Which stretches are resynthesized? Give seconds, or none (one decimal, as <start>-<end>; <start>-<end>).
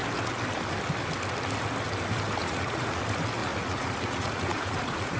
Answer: 2.4-3.0; 3.4-5.2